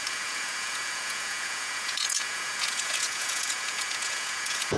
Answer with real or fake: fake